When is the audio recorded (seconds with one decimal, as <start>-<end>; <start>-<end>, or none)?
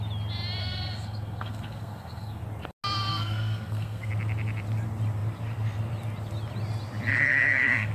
0.0-0.6; 2.4-3.1; 4.1-7.1